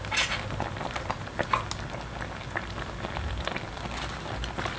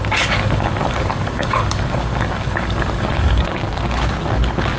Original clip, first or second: first